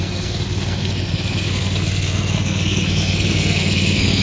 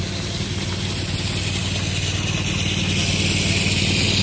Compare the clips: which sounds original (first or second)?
second